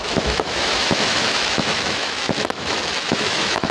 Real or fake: fake